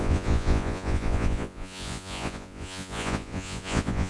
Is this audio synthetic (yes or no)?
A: yes